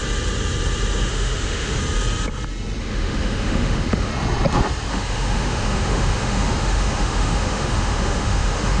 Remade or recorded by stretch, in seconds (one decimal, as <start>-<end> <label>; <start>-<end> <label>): 0.0-1.1 recorded; 1.1-1.8 remade; 1.8-2.8 recorded; 2.8-4.1 remade; 4.1-4.9 recorded; 4.9-8.8 remade